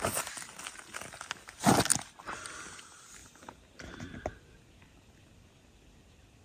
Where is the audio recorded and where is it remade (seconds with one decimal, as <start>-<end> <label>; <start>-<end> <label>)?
0.0-3.2 recorded; 3.2-4.2 remade; 4.2-6.4 recorded